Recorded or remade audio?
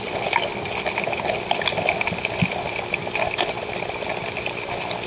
recorded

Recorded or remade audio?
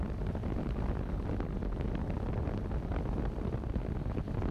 recorded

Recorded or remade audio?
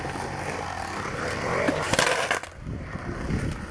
recorded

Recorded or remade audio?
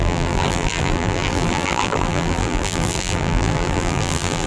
remade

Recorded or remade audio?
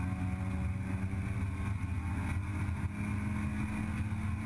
recorded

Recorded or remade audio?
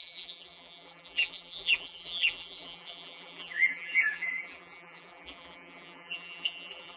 remade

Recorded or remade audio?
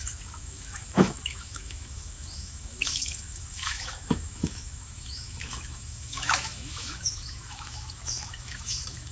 remade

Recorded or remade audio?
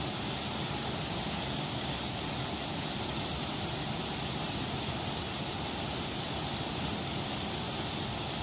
recorded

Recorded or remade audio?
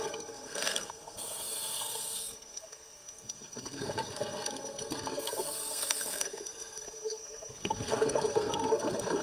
remade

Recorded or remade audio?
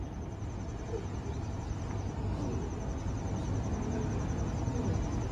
recorded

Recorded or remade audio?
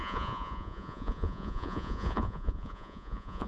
remade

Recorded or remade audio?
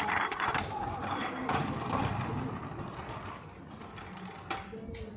recorded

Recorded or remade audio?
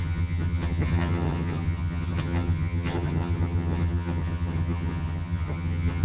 remade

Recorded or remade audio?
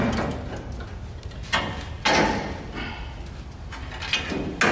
recorded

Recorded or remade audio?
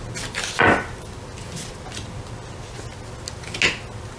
recorded